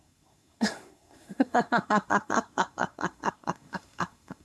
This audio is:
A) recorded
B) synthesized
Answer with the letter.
B